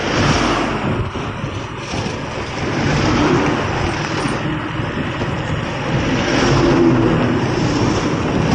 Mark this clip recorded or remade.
recorded